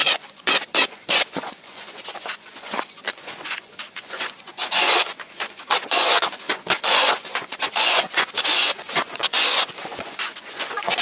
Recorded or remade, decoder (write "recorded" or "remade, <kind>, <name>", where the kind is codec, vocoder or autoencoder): remade, vocoder, Vocos